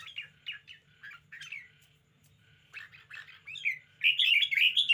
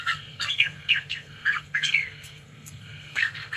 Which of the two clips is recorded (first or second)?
first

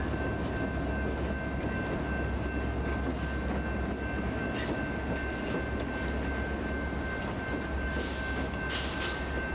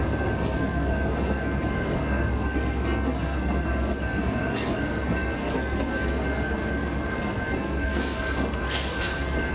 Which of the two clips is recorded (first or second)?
first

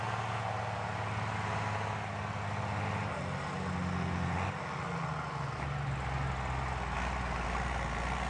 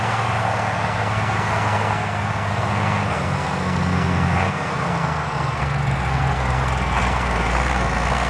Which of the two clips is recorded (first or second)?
first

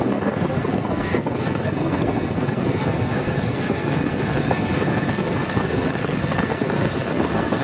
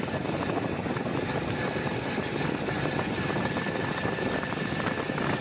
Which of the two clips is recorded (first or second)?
second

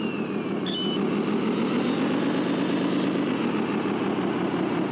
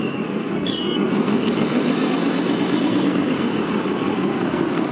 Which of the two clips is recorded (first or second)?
first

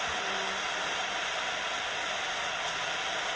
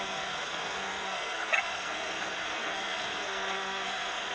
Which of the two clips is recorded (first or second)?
first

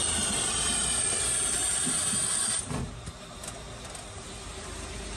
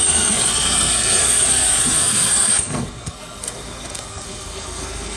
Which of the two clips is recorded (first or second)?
first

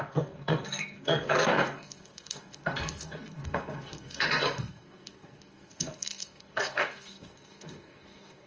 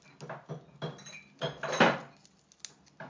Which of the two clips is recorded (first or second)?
second